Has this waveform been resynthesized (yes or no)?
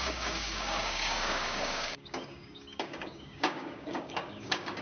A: yes